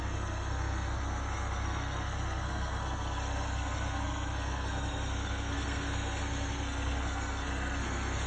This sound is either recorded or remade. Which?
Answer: remade